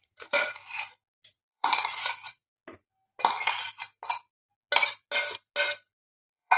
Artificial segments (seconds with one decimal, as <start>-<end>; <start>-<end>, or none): 0.0-0.6; 1.2-2.6; 6.0-6.6